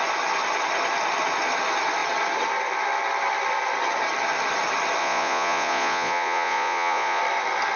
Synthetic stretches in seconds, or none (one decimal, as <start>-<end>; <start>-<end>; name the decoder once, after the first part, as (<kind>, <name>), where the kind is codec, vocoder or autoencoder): 5.0-7.2 (vocoder, Vocos)